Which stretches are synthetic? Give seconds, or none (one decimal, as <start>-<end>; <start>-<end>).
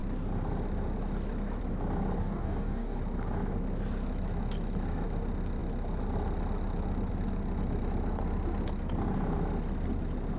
2.2-3.0